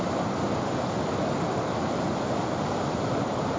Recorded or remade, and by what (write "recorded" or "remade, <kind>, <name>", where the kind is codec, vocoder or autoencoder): recorded